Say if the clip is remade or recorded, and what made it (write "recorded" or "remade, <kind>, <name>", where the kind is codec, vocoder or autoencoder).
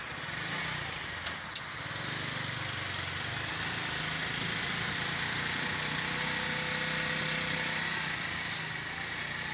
recorded